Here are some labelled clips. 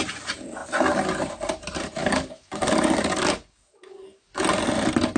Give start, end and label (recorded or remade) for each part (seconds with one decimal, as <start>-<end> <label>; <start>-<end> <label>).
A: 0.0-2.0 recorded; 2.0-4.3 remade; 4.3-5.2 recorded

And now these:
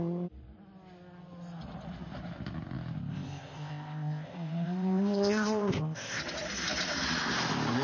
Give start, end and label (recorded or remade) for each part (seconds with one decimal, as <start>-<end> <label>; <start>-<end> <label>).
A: 0.0-3.1 recorded; 3.1-6.2 remade; 6.2-7.8 recorded

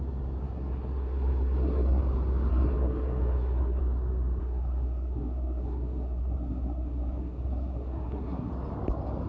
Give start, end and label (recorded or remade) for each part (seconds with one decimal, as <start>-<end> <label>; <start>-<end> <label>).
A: 0.0-0.4 recorded; 0.4-2.0 remade; 2.0-2.5 recorded; 2.5-3.8 remade; 3.8-4.4 recorded; 4.4-8.5 remade; 8.5-9.3 recorded